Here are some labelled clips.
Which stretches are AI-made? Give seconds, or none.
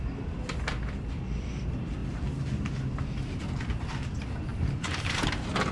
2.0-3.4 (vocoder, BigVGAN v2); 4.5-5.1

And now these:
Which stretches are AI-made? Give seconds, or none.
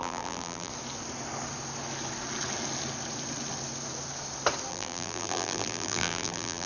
0.0-0.7 (vocoder, BigVGAN v2); 4.7-6.7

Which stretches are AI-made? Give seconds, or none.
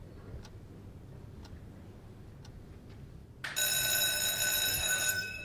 4.7-5.4 (codec, SNAC)